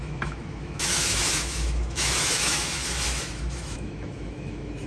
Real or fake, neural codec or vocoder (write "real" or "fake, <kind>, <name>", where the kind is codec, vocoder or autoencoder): fake, autoencoder, DAC-VAE